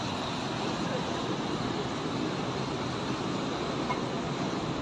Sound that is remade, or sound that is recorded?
recorded